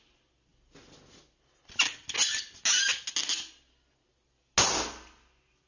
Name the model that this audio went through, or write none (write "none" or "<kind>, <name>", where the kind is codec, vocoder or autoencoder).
none